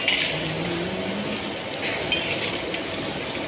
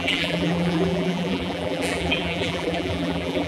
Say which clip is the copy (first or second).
second